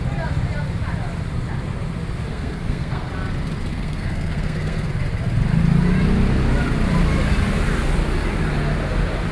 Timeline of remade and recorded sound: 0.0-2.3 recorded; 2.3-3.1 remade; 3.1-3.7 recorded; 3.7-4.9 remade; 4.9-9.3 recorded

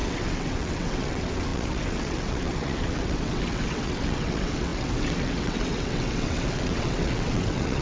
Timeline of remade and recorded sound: 0.0-7.8 remade

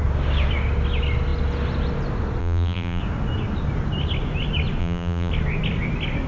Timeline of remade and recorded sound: 0.0-2.4 recorded; 2.4-3.0 remade; 3.0-4.8 recorded; 4.8-5.3 remade; 5.3-6.3 recorded

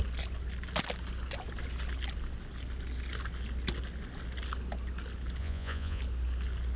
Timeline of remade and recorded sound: 0.0-5.4 recorded; 5.4-6.0 remade; 6.0-6.8 recorded